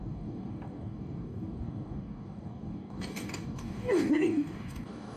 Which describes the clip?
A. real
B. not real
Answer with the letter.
B